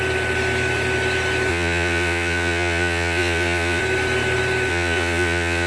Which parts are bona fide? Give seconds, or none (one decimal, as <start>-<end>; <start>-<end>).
0.0-1.5; 3.8-4.7